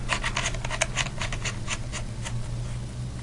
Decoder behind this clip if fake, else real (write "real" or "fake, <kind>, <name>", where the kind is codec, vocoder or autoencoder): real